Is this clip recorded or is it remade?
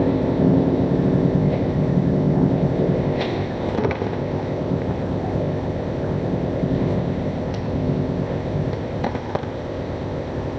remade